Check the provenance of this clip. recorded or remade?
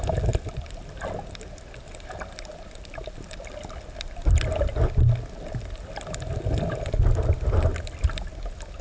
recorded